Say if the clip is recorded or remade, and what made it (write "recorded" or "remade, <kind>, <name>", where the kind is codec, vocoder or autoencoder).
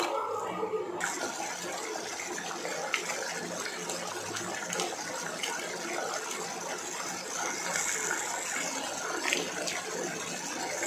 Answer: recorded